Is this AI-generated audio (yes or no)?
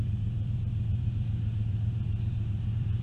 yes